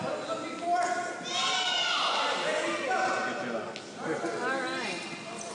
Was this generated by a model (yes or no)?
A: no